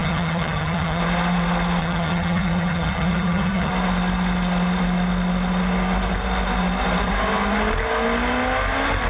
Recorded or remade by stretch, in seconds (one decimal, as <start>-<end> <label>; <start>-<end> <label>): 0.0-1.0 remade; 1.0-1.8 recorded; 1.8-3.7 remade; 3.7-9.1 recorded